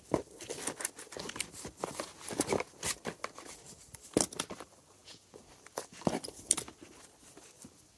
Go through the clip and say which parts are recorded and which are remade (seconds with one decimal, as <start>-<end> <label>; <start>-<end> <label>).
0.0-5.0 recorded; 5.0-5.5 remade; 5.5-8.0 recorded